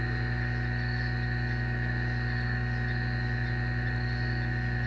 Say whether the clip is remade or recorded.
recorded